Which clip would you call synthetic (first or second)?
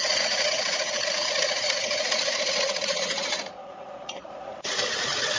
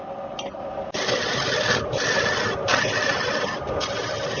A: first